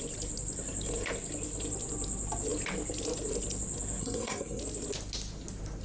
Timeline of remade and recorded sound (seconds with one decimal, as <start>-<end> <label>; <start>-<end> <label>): 0.0-4.0 recorded; 4.0-4.6 remade; 4.6-5.8 recorded

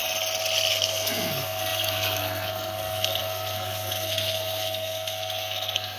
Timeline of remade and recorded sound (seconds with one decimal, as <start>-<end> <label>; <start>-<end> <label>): 0.0-0.7 recorded; 0.7-6.0 remade

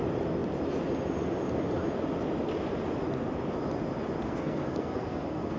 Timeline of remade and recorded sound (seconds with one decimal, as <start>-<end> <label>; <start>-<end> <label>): 0.0-4.2 recorded; 4.2-5.6 remade

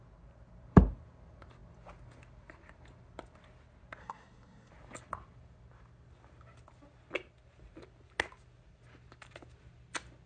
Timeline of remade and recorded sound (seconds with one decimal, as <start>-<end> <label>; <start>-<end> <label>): 0.0-4.0 recorded; 4.0-4.7 remade; 4.7-10.3 recorded

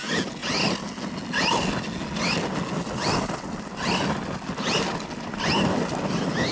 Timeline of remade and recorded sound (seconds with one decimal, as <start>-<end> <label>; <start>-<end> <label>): 0.0-6.5 recorded

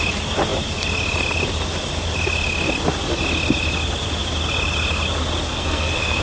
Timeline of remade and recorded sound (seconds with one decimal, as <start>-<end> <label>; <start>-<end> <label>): 0.0-5.5 recorded; 5.5-6.2 remade

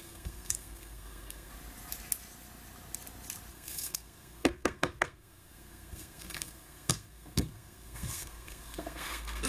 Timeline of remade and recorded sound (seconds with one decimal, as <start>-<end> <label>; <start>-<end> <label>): 0.0-1.5 remade; 1.5-3.5 recorded; 3.5-9.5 remade